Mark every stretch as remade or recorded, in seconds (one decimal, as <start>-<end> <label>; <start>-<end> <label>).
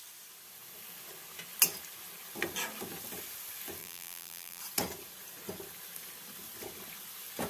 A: 0.0-3.8 recorded; 3.8-4.6 remade; 4.6-7.5 recorded